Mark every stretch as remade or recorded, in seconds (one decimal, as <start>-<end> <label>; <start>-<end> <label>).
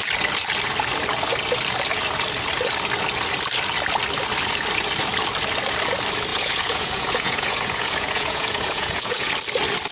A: 0.0-6.3 recorded; 6.3-9.3 remade; 9.3-9.9 recorded